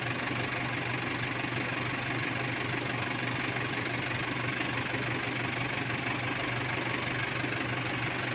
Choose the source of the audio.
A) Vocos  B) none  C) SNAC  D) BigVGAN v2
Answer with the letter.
B